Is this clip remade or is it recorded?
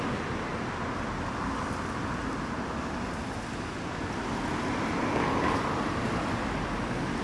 recorded